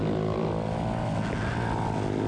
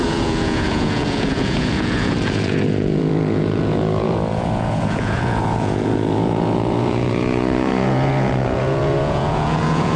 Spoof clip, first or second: second